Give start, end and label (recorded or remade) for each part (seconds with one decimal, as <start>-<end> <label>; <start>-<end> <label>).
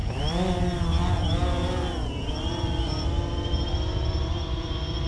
0.0-5.1 recorded